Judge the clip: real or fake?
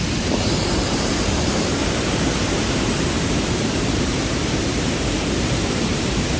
fake